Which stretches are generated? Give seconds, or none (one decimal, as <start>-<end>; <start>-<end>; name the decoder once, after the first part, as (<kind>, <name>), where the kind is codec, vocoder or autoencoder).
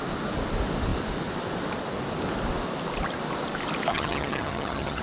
3.9-5.0 (vocoder, HiFi-GAN)